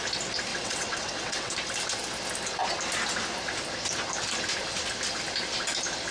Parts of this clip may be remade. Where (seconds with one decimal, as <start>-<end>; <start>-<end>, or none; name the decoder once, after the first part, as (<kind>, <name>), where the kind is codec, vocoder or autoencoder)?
0.5-1.5 (vocoder, WaveNeXt)